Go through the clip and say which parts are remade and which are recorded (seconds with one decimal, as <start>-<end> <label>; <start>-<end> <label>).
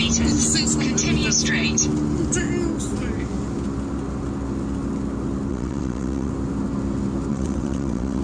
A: 0.0-5.5 recorded; 5.5-6.3 remade; 6.3-7.3 recorded; 7.3-8.2 remade